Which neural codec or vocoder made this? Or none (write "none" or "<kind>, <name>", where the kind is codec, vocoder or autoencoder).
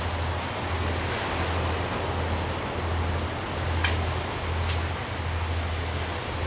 none